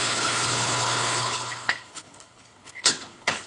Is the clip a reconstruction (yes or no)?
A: yes